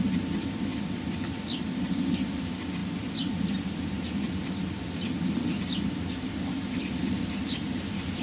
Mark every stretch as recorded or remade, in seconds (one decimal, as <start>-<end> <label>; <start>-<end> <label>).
0.0-8.2 recorded